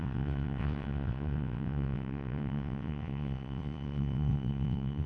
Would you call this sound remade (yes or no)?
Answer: yes